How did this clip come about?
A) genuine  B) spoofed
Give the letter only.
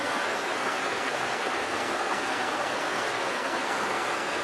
B